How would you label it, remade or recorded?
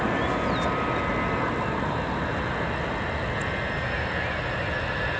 recorded